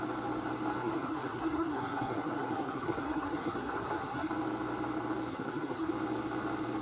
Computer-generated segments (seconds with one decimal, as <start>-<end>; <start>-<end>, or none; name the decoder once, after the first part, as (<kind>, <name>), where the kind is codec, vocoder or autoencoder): 0.8-4.3 (codec, SNAC); 5.3-5.9